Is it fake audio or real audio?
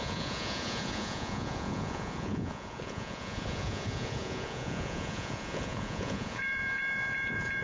fake